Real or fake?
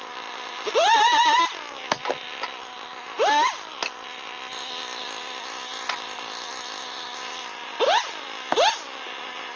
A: real